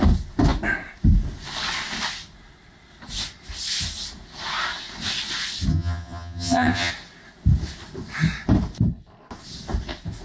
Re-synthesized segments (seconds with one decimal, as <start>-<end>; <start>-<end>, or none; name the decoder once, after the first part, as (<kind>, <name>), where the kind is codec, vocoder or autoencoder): 5.7-6.9 (vocoder, HiFi-GAN)